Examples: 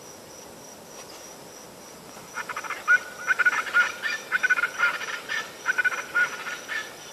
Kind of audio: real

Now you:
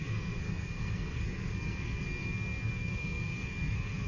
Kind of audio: fake